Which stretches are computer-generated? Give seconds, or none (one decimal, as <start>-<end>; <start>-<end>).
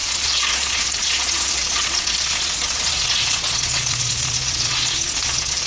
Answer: 0.0-5.7